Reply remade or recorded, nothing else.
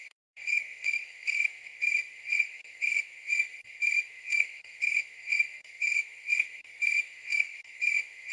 remade